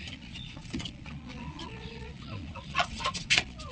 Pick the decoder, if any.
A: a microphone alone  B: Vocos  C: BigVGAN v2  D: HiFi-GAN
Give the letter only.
B